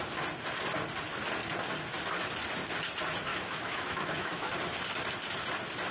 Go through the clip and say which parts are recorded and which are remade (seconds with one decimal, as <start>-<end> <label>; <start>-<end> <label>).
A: 0.0-3.3 recorded; 3.3-4.5 remade; 4.5-5.9 recorded

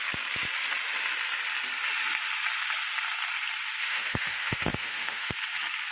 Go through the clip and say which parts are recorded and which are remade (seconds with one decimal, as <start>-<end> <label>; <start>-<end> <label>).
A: 0.0-3.8 recorded; 3.8-5.3 remade; 5.3-5.9 recorded

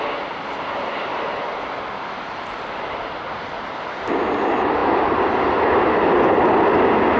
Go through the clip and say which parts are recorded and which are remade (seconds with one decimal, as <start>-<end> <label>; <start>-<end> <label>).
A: 0.0-7.2 recorded

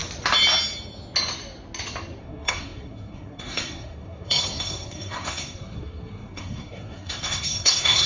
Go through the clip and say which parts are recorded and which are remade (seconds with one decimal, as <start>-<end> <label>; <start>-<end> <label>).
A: 0.0-2.2 recorded; 2.2-8.1 remade

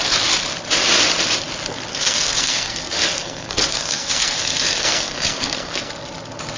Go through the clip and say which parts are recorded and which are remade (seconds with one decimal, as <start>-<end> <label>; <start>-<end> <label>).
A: 0.0-1.9 recorded; 1.9-5.9 remade; 5.9-6.6 recorded

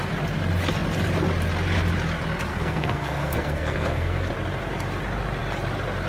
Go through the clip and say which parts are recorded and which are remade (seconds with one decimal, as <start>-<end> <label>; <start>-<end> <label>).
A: 0.0-2.5 recorded; 2.5-4.3 remade; 4.3-6.1 recorded

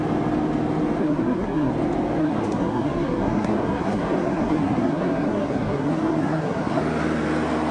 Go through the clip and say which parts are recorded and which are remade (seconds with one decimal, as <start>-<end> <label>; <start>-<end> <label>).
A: 0.0-1.0 recorded; 1.0-1.7 remade; 1.7-2.2 recorded; 2.2-6.8 remade; 6.8-7.7 recorded

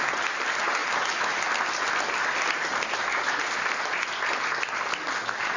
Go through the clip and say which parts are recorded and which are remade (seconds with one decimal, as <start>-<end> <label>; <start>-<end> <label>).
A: 0.0-5.6 recorded